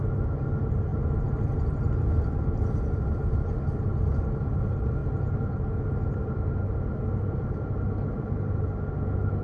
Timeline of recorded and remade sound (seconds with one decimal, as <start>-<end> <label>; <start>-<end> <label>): 0.0-9.4 recorded